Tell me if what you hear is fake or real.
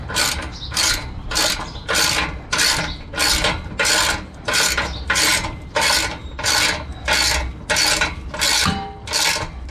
real